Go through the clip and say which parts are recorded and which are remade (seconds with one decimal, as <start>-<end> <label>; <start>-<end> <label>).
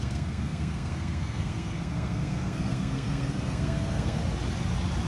0.0-4.2 remade; 4.2-5.1 recorded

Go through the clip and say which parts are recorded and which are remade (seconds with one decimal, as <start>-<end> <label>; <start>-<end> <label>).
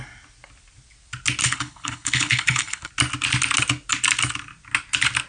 0.0-1.4 recorded; 1.4-2.9 remade; 2.9-5.3 recorded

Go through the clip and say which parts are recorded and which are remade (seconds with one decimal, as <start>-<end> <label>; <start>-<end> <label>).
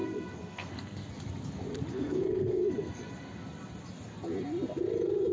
0.0-1.1 remade; 1.1-1.9 recorded; 1.9-2.9 remade; 2.9-5.3 recorded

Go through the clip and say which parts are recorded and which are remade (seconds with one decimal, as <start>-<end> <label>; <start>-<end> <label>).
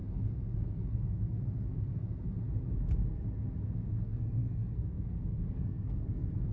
0.0-2.0 remade; 2.0-4.0 recorded; 4.0-6.5 remade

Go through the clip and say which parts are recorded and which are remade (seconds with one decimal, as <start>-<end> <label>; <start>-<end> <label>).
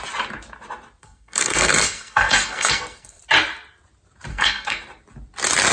0.0-1.0 recorded; 1.0-3.2 remade; 3.2-4.3 recorded; 4.3-4.8 remade; 4.8-5.7 recorded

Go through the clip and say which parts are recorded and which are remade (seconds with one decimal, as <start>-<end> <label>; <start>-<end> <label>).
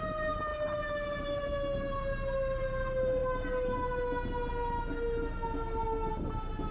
0.0-6.7 recorded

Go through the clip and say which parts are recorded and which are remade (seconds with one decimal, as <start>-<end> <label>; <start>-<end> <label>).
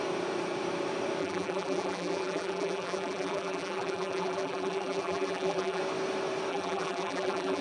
0.0-1.2 recorded; 1.2-5.8 remade; 5.8-6.5 recorded; 6.5-7.6 remade